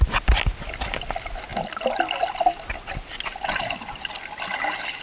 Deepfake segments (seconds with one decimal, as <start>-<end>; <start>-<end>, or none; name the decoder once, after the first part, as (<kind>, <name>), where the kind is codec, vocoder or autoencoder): none